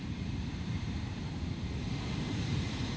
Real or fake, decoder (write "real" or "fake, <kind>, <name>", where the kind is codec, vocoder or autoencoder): fake, vocoder, BigVGAN v2